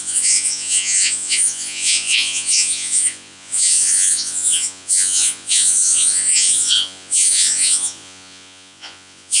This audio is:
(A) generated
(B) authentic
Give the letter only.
A